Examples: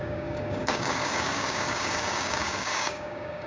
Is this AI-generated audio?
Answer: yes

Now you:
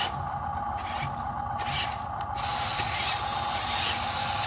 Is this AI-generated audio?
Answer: no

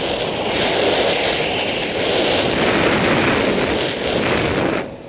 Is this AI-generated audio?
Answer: no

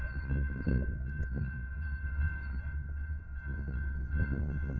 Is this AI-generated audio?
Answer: yes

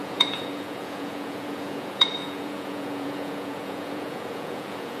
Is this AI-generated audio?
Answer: yes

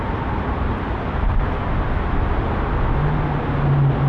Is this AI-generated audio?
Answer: no